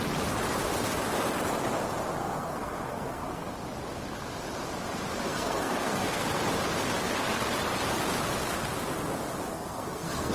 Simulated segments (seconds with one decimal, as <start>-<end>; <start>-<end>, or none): 2.2-3.5; 5.2-6.4; 9.5-10.3